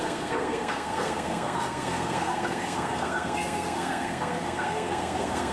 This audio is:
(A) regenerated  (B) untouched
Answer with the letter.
A